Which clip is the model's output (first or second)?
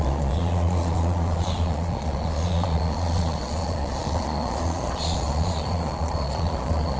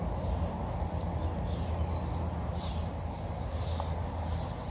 first